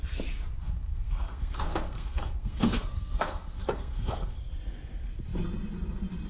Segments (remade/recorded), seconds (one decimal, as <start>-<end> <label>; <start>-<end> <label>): 0.0-0.6 recorded; 0.6-4.4 remade; 4.4-6.3 recorded